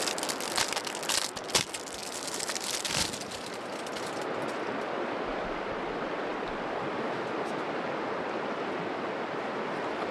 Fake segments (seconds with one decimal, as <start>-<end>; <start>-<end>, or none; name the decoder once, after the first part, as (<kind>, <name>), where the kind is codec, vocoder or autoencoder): 2.0-3.9 (vocoder, BigVGAN v2)